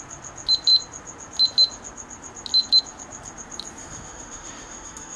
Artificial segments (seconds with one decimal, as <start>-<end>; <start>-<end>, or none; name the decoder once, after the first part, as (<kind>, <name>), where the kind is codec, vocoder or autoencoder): 3.8-5.2 (autoencoder, DAC-VAE)